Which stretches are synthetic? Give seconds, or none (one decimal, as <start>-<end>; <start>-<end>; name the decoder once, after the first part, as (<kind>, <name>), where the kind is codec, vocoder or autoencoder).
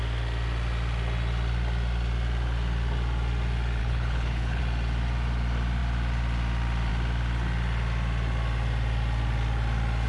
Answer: 3.8-4.6 (codec, HILCodec)